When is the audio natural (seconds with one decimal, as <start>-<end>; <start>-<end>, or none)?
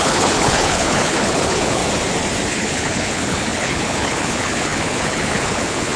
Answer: 1.8-2.5